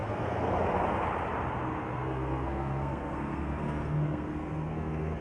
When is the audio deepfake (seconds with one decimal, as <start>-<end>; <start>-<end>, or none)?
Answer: 0.0-0.6; 1.8-5.2

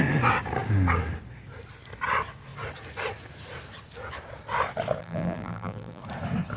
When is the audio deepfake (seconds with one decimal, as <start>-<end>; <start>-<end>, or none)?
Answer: 5.0-6.0

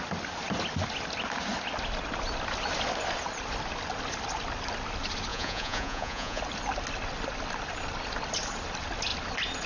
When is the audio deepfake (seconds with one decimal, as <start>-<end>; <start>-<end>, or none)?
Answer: 5.3-6.4

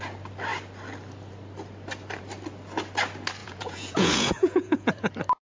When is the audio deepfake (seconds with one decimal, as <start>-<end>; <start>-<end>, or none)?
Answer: 3.4-5.1